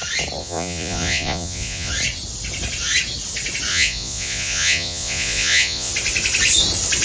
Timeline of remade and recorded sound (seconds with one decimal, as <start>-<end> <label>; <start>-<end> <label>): 0.0-0.4 recorded; 0.4-1.9 remade; 1.9-3.7 recorded; 3.7-5.9 remade; 5.9-7.0 recorded